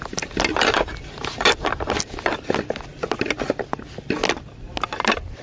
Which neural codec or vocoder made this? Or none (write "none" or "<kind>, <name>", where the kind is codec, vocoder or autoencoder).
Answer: none